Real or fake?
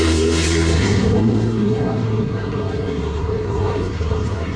fake